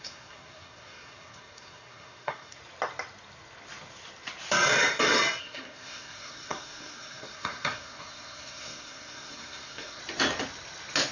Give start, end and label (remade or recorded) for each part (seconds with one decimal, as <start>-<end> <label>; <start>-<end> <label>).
0.0-2.6 remade; 2.6-5.4 recorded; 5.4-10.0 remade; 10.0-11.1 recorded